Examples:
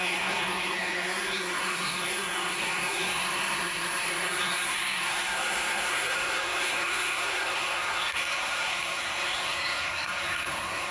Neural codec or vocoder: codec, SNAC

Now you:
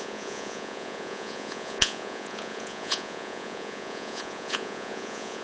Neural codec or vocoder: vocoder, Vocos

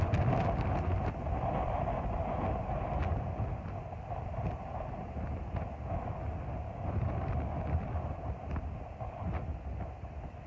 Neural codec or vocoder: none